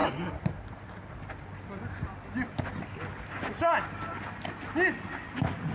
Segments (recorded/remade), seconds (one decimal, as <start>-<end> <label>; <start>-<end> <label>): 0.0-5.7 recorded